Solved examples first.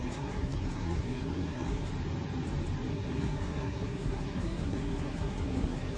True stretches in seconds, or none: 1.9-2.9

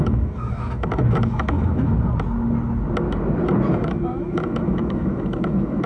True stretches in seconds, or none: 1.9-3.7

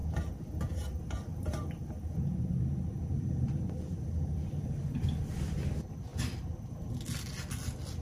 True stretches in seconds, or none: 4.7-8.0

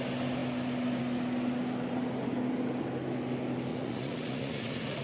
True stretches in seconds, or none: 0.0-3.7

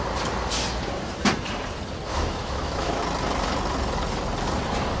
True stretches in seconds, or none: 0.0-2.1; 3.0-5.0